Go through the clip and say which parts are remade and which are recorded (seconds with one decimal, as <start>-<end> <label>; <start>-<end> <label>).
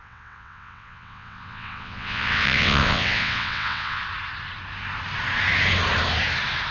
0.0-4.0 remade; 4.0-6.7 recorded